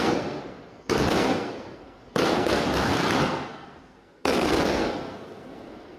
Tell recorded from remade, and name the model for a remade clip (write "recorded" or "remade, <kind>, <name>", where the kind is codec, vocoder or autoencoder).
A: remade, codec, SNAC